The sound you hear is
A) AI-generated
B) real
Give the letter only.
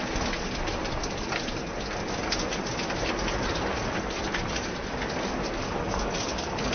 B